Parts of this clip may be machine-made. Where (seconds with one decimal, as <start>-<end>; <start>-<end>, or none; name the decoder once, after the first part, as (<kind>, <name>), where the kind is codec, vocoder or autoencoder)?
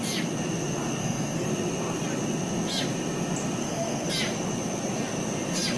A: 1.0-1.5 (codec, SNAC); 3.6-4.1